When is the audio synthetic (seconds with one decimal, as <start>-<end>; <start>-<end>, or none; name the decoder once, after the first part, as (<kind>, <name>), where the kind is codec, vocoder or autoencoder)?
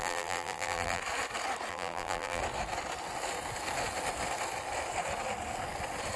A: 0.0-1.0 (vocoder, BigVGAN v2); 1.7-2.4